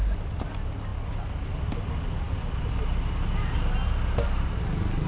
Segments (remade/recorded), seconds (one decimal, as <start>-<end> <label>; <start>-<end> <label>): 0.0-5.1 recorded